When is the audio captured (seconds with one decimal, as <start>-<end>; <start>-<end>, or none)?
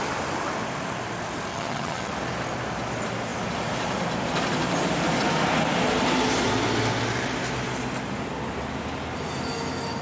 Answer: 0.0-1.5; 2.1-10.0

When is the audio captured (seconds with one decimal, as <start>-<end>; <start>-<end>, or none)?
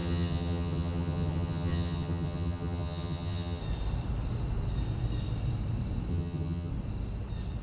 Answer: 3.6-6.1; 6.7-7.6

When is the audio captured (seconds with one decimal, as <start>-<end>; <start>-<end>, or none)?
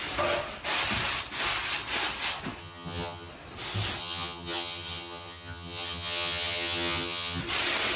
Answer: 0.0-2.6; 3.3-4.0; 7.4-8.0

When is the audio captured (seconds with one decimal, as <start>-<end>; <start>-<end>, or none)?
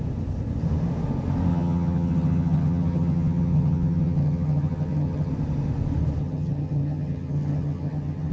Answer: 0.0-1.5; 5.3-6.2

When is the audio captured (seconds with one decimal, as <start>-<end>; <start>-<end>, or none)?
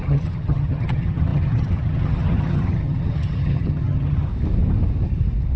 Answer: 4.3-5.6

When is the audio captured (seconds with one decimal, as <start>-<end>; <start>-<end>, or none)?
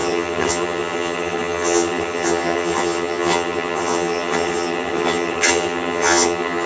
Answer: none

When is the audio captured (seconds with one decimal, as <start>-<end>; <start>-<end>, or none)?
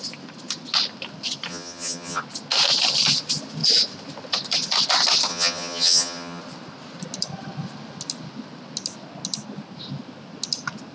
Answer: 0.0-1.5; 2.2-5.3; 6.4-10.9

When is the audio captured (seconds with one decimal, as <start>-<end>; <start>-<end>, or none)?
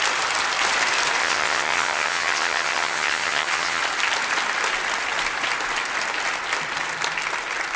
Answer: 0.0-1.2; 3.8-7.8